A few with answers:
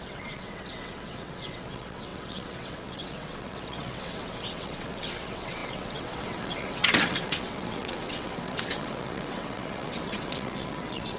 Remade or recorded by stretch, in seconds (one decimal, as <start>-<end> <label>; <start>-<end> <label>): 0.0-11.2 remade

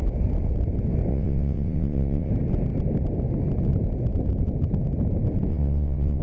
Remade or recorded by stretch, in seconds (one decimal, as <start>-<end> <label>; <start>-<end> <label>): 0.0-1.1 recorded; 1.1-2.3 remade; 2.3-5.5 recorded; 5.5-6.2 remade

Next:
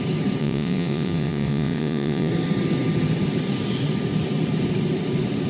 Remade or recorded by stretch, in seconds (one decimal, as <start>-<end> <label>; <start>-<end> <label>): 0.0-0.4 recorded; 0.4-2.3 remade; 2.3-5.5 recorded